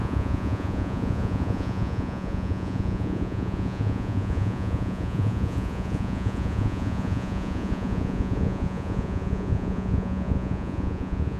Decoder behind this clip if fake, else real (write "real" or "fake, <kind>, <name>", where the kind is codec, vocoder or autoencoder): fake, vocoder, Vocos